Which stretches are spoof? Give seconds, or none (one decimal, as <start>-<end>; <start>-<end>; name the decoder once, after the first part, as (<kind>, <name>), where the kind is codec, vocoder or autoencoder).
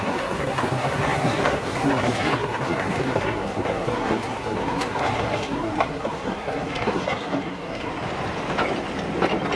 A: 0.0-7.9 (codec, SNAC)